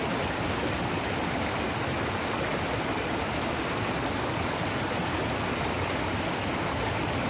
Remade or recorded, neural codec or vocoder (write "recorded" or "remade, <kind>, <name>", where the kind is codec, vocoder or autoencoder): recorded